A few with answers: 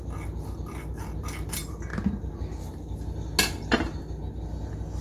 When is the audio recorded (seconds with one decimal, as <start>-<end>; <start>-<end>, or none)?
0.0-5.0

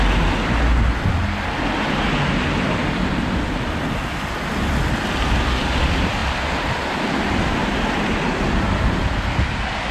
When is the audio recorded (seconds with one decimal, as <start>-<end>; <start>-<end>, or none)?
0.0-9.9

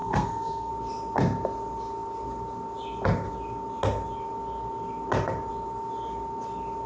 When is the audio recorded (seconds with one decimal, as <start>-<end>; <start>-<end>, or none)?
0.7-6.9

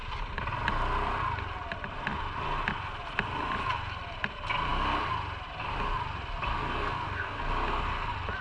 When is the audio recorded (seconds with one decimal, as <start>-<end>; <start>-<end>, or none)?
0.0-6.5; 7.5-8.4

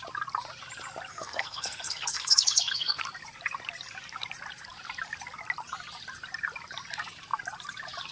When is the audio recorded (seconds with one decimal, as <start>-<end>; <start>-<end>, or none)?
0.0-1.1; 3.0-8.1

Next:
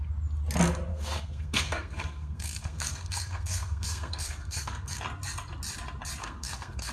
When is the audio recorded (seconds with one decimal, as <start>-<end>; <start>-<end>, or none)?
0.0-0.9; 5.0-6.2

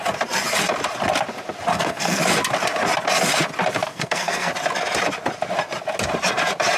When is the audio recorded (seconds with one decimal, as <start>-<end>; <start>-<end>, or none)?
0.0-1.7; 2.2-3.9; 4.5-6.8